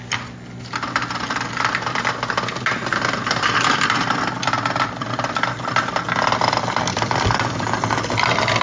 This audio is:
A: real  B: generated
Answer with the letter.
A